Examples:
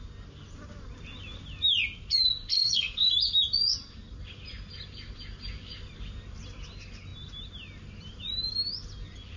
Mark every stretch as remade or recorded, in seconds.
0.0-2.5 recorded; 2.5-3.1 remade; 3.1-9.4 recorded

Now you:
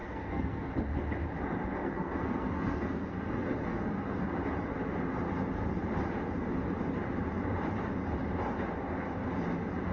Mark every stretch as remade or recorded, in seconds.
0.0-0.7 remade; 0.7-1.8 recorded; 1.8-4.4 remade; 4.4-9.9 recorded

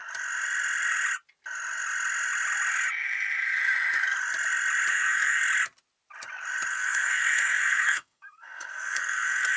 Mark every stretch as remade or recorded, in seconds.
0.0-4.9 recorded; 4.9-5.4 remade; 5.4-6.7 recorded; 6.7-9.6 remade